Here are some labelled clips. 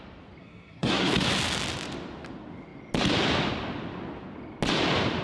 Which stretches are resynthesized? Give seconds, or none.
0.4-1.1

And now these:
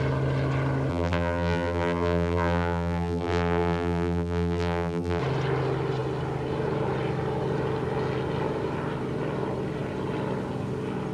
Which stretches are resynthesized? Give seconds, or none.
0.9-5.2

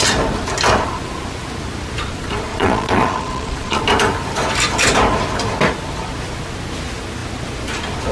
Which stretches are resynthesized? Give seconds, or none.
2.5-3.8